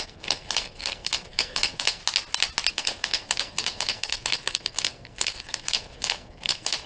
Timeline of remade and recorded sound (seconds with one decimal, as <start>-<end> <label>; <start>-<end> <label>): 0.0-2.0 remade; 2.0-2.7 recorded; 2.7-6.9 remade